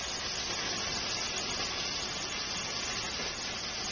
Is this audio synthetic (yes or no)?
no